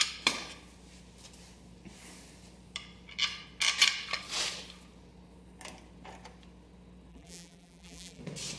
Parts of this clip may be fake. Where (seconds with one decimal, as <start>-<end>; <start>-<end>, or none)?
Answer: 7.1-8.2